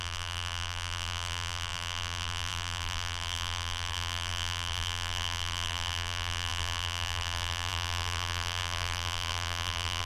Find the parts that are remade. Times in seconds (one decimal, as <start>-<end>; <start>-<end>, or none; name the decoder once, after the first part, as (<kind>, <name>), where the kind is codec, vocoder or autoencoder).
0.0-10.1 (vocoder, BigVGAN v2)